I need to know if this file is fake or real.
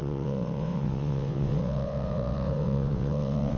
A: fake